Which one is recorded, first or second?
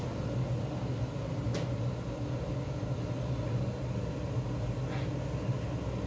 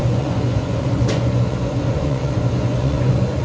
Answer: first